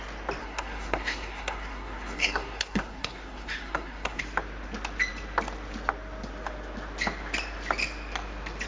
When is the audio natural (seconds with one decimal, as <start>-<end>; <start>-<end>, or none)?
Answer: 0.0-0.4; 4.2-8.7